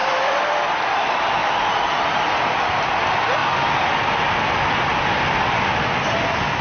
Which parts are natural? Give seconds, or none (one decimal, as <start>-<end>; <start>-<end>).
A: 1.4-2.2

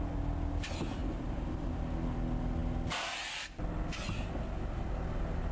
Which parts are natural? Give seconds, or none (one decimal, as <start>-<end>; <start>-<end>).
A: 0.0-5.5